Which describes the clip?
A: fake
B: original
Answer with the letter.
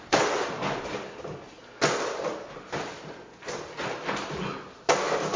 B